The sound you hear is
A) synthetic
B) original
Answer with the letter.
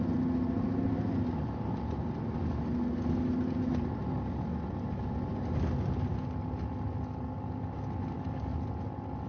B